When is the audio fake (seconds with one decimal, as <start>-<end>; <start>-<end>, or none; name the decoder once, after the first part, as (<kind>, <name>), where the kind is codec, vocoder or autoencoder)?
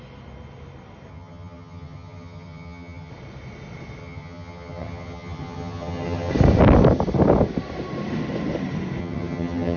1.1-3.1 (vocoder, HiFi-GAN); 4.0-6.3; 9.0-9.8